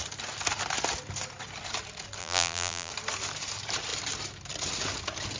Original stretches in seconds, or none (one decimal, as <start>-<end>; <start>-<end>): 0.0-2.2; 2.9-5.4